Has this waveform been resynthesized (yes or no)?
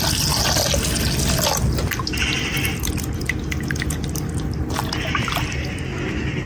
no